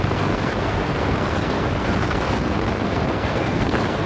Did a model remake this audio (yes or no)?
yes